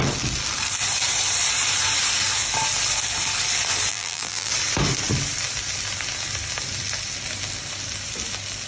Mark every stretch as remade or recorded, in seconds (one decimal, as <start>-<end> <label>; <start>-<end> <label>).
0.0-3.9 recorded; 3.9-4.5 remade; 4.5-8.7 recorded